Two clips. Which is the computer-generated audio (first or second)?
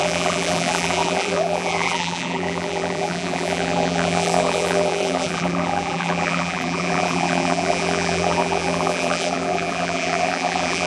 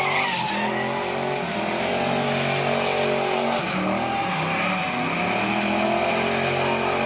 first